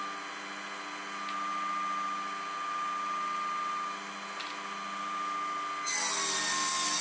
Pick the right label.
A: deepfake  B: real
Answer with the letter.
B